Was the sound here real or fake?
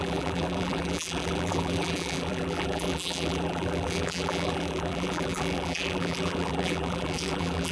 fake